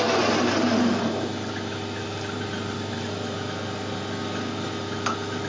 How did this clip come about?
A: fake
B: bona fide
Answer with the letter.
B